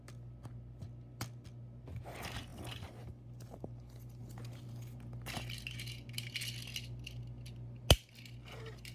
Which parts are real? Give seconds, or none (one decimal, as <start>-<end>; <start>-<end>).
0.0-8.9